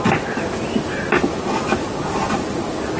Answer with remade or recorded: recorded